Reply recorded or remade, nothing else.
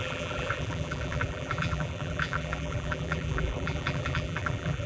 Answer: remade